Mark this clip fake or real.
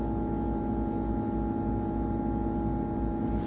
real